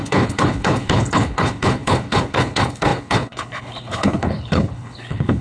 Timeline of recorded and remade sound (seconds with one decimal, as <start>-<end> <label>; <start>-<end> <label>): 0.0-5.4 remade